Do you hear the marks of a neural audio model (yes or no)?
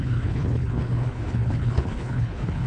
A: yes